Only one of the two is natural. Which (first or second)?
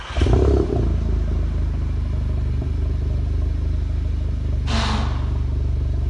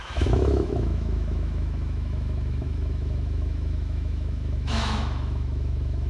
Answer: first